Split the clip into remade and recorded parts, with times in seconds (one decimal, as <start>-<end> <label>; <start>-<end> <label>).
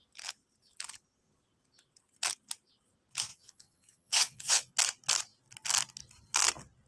0.0-3.3 recorded; 3.3-4.7 remade; 4.7-6.9 recorded